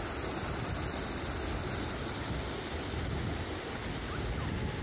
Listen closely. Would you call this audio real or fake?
real